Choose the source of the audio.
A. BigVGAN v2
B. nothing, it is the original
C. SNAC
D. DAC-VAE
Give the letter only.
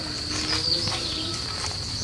B